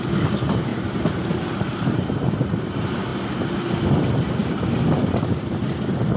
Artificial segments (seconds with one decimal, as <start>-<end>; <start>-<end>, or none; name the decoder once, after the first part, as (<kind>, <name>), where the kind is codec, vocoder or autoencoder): 0.7-2.6 (vocoder, BigVGAN v2); 4.4-5.6